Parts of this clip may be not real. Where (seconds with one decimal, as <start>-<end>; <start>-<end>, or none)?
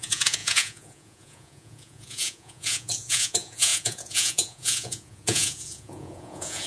0.0-6.7